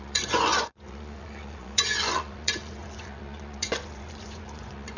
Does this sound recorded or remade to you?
remade